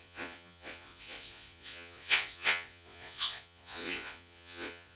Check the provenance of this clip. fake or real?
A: fake